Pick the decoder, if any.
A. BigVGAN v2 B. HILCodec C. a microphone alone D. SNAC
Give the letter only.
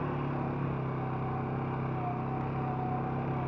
C